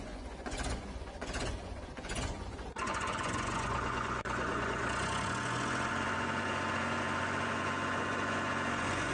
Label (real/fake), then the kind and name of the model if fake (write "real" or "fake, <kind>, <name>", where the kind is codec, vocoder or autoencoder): fake, vocoder, Vocos